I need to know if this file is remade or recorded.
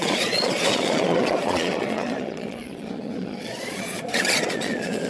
remade